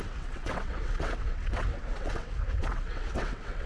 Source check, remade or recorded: remade